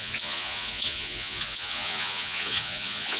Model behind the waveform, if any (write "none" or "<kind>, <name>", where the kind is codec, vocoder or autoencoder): vocoder, Vocos